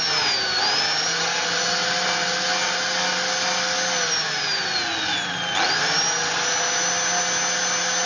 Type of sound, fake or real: real